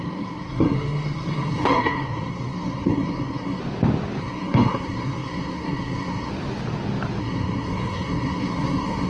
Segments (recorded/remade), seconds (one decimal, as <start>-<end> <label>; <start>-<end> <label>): 0.0-3.6 remade; 3.6-4.2 recorded; 4.2-6.3 remade; 6.3-7.2 recorded; 7.2-9.1 remade